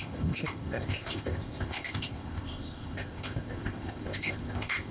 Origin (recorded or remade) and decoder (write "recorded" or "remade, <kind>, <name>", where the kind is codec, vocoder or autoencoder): remade, codec, ZipCodec